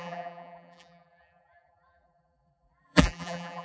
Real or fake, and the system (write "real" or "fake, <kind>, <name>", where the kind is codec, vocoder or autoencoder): fake, vocoder, BigVGAN v2